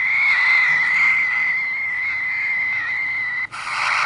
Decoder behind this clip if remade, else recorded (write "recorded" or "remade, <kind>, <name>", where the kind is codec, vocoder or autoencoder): recorded